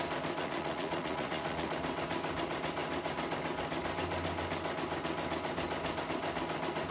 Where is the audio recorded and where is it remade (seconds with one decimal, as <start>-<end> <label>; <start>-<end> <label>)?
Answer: 0.0-0.4 recorded; 0.4-1.7 remade; 1.7-6.9 recorded